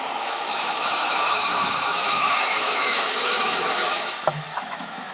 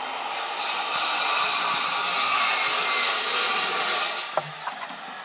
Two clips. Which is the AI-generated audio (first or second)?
first